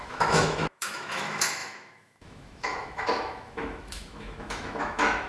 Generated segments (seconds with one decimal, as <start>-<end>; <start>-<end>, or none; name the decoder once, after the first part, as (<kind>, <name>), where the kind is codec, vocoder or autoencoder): 0.0-5.3 (autoencoder, DAC-VAE)